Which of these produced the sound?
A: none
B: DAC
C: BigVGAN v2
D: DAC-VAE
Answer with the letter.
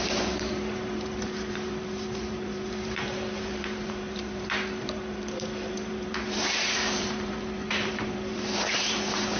C